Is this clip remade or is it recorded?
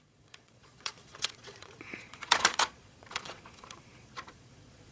remade